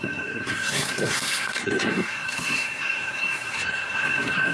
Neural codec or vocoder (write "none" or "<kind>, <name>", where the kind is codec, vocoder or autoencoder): codec, SNAC